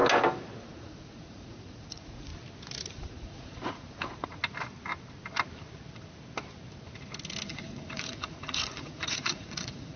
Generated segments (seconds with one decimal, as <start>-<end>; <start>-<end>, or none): 0.6-2.3; 2.9-4.4; 7.5-10.0